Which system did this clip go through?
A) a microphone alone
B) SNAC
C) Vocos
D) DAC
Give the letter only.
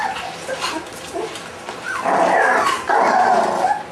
A